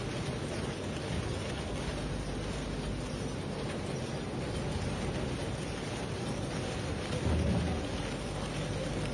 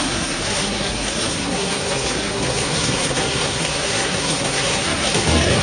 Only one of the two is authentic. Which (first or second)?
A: first